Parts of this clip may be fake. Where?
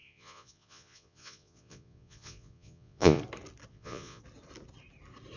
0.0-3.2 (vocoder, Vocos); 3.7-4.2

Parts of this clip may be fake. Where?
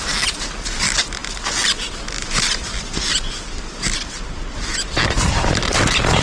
none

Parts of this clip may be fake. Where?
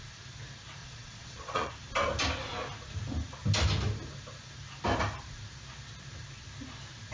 0.8-1.7 (vocoder, Vocos)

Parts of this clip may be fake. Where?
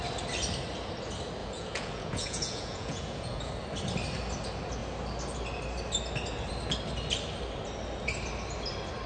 1.4-3.5 (vocoder, Vocos)